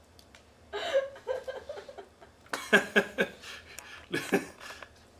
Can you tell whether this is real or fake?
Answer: real